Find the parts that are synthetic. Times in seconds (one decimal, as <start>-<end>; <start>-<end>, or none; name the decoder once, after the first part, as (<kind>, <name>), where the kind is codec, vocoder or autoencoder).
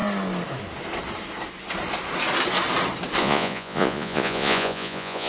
3.2-5.3 (vocoder, Vocos)